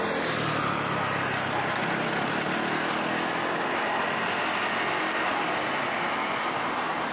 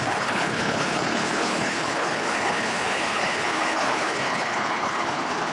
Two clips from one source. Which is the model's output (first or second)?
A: second